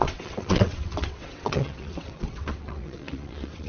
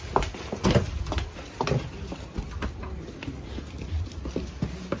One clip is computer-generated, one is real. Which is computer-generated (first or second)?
first